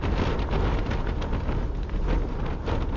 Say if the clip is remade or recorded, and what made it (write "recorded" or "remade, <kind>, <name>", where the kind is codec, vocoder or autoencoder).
recorded